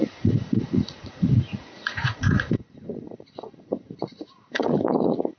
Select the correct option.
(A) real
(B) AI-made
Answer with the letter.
B